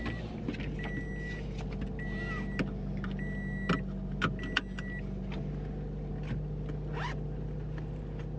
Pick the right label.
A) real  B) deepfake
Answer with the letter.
A